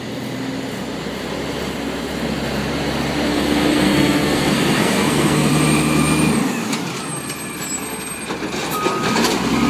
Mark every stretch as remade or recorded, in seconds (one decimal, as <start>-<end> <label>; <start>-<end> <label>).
0.0-3.3 recorded; 3.3-5.5 remade; 5.5-9.7 recorded